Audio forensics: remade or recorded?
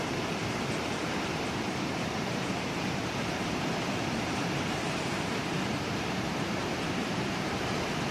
remade